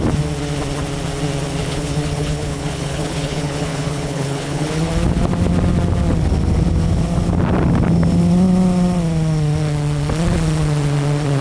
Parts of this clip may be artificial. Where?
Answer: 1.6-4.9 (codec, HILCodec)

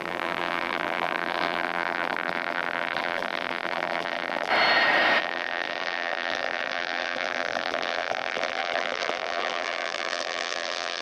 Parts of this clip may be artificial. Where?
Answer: 0.0-4.5 (vocoder, BigVGAN v2); 5.2-11.0

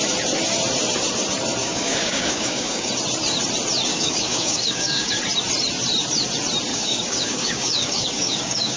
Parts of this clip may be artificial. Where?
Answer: 1.6-2.9 (codec, DAC); 3.9-5.2; 6.7-8.8

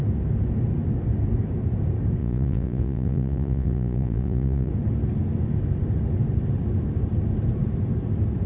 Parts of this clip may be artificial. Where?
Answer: 2.2-4.7 (vocoder, Vocos)

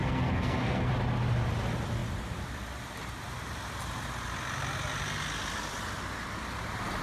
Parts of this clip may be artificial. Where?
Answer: 0.0-0.9 (codec, SNAC)

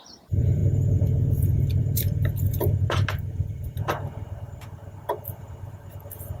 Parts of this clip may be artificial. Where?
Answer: 0.0-6.4 (vocoder, BigVGAN v2)

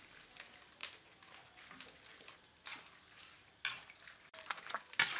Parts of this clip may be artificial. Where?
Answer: none

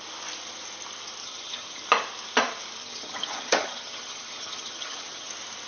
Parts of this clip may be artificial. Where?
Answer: 1.2-1.8 (vocoder, HiFi-GAN); 2.8-5.3